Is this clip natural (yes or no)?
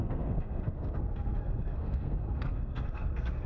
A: no